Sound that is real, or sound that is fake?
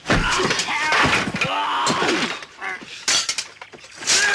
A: real